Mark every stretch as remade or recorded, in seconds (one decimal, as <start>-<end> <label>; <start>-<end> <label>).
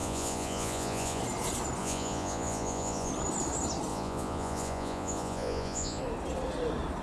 0.0-1.2 remade; 1.2-1.8 recorded; 1.8-3.1 remade; 3.1-3.9 recorded; 3.9-6.0 remade; 6.0-7.0 recorded